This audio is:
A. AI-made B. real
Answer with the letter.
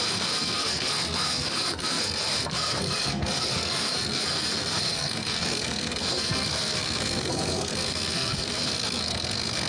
A